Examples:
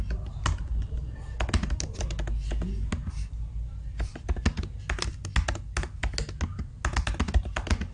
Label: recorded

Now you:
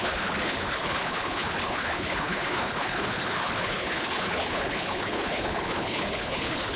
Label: remade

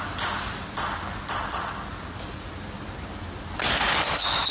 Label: recorded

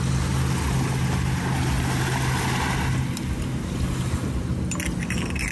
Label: recorded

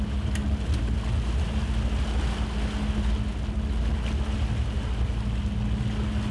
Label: recorded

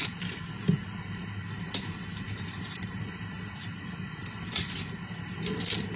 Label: recorded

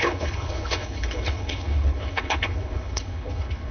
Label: remade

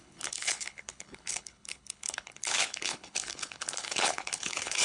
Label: remade